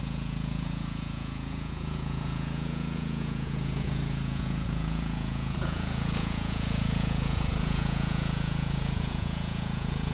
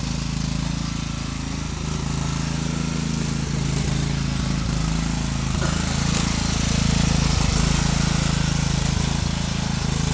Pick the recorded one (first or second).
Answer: second